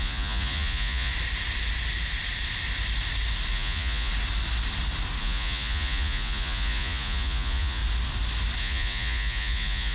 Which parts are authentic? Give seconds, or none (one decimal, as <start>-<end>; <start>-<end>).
1.1-3.5; 4.1-5.2; 7.8-8.6